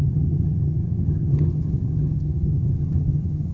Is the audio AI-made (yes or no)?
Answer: yes